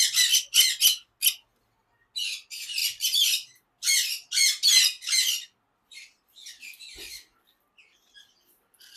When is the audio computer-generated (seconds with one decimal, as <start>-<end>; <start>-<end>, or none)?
none